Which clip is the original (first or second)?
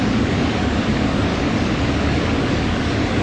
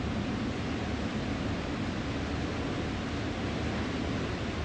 second